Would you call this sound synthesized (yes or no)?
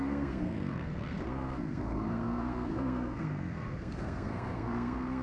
yes